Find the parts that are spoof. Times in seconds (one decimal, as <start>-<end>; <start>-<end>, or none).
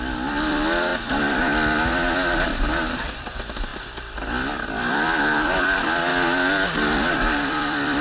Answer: 0.0-0.9; 1.9-3.7; 4.5-6.1; 7.5-8.0